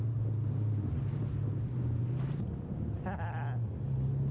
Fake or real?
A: real